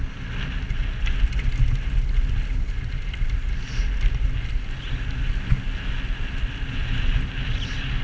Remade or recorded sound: recorded